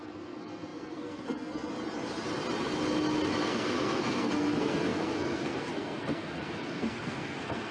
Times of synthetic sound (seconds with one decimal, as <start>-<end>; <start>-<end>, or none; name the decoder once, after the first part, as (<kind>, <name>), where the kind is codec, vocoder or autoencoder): 0.0-1.7 (codec, SNAC); 3.4-7.7